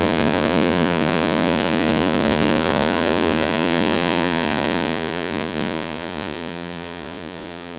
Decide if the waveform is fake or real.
fake